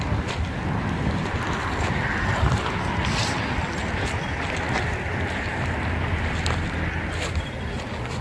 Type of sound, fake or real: real